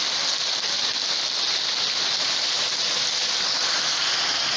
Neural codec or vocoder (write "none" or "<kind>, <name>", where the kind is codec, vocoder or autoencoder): none